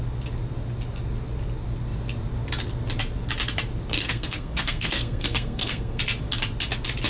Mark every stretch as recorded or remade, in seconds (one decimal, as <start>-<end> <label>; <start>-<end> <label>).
0.0-4.0 recorded; 4.0-6.0 remade; 6.0-7.1 recorded